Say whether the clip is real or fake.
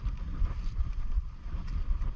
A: fake